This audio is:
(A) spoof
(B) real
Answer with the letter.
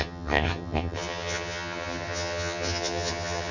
A